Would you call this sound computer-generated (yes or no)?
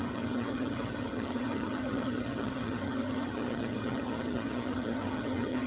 yes